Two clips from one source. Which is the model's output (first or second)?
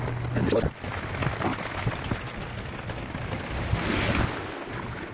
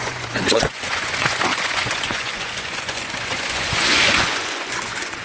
second